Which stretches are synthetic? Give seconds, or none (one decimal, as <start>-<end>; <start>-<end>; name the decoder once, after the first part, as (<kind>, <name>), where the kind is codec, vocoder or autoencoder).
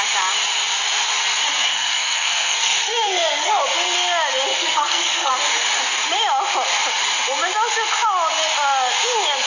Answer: 1.7-3.6 (codec, SNAC); 4.5-5.3